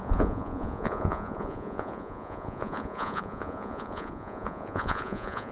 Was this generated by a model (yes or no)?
yes